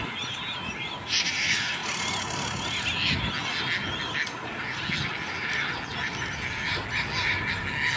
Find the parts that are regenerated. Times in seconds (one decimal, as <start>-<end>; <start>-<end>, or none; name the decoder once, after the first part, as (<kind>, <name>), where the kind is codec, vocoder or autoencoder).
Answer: none